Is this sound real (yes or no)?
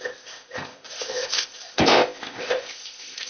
no